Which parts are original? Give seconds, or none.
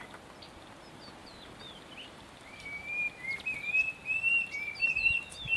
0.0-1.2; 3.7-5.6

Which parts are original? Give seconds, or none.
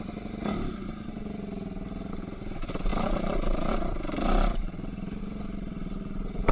none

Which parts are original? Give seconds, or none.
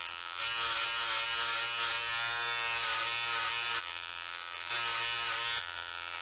0.4-3.8; 4.7-5.6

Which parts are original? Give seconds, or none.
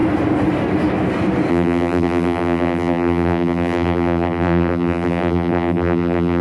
0.0-1.5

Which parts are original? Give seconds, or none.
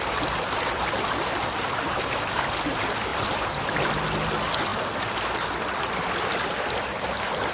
0.0-3.1; 3.9-7.5